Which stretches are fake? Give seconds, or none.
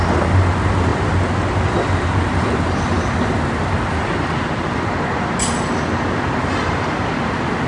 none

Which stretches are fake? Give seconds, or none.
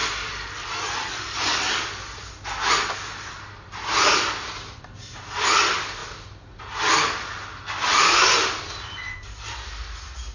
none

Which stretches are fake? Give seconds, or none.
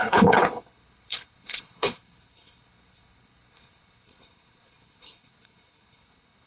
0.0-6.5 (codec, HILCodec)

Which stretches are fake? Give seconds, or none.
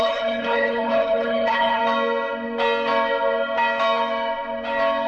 0.0-1.8 (codec, HILCodec)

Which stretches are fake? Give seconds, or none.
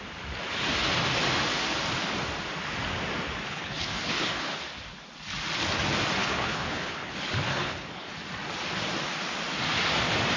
3.5-4.6 (codec, HILCodec); 6.2-7.1; 7.5-8.1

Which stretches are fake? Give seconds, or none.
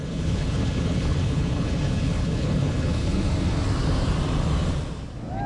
0.0-3.3 (codec, HILCodec)